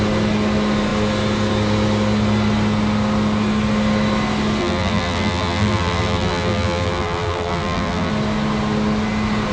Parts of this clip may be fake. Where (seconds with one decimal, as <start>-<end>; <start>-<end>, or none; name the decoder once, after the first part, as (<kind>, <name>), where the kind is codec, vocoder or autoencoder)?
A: 4.6-8.1 (vocoder, BigVGAN v2)